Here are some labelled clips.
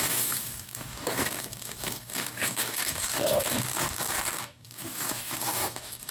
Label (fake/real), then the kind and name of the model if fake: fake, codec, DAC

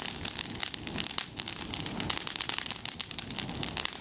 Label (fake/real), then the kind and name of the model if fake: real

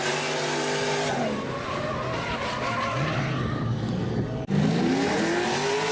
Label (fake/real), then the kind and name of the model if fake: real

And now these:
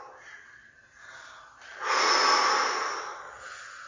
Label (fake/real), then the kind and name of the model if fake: real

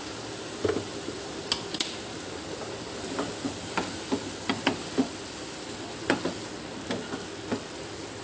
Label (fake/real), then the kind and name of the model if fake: real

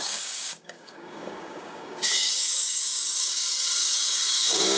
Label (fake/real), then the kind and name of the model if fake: fake, codec, DAC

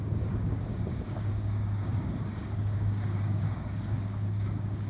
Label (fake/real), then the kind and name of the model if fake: fake, codec, DAC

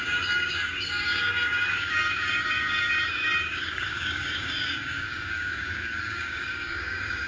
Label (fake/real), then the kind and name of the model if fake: fake, codec, DAC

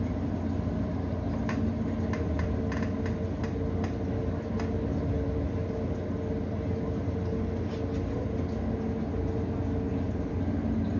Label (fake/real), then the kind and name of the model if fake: real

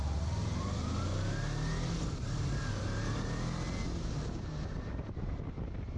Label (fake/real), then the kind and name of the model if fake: real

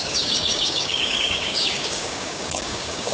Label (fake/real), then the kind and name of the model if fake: fake, codec, DAC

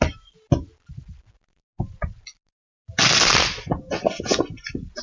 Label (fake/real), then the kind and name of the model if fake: real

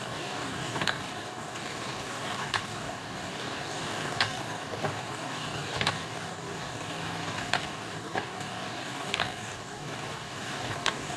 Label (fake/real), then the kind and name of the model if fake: fake, codec, DAC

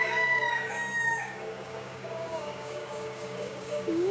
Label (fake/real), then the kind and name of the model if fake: fake, codec, DAC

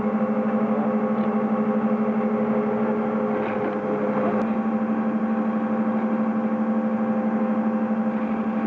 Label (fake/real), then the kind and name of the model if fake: real